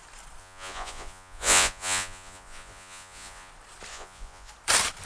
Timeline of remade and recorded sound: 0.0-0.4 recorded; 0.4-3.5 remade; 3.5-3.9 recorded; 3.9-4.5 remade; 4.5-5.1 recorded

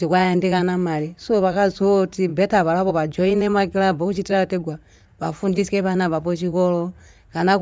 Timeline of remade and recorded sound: 0.0-0.6 remade; 0.6-1.2 recorded; 1.2-2.3 remade; 2.3-2.9 recorded; 2.9-7.6 remade

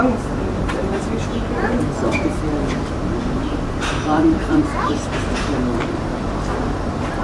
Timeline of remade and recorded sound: 0.0-0.6 recorded; 0.6-4.9 remade; 4.9-7.2 recorded

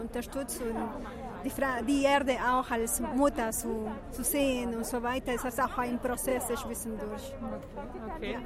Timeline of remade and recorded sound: 0.0-8.5 recorded

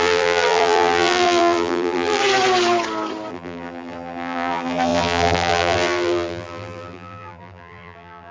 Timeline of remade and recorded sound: 0.0-2.2 remade; 2.2-3.3 recorded; 3.3-8.3 remade